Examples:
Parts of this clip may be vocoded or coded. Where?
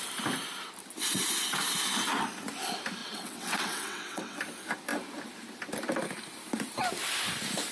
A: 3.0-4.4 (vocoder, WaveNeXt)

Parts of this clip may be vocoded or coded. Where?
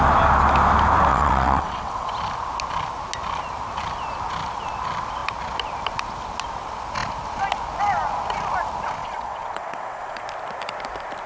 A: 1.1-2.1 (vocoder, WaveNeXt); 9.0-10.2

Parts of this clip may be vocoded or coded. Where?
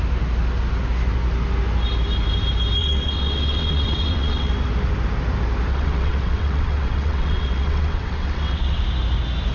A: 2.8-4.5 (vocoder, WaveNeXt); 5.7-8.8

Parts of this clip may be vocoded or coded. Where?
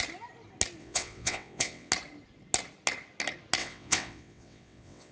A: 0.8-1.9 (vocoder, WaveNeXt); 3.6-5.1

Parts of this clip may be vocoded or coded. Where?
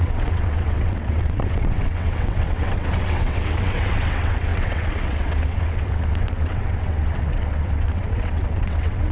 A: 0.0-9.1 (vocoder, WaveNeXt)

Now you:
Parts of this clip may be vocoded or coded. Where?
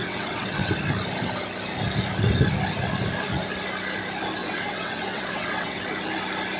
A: 0.0-0.7 (vocoder, WaveNeXt); 4.4-5.8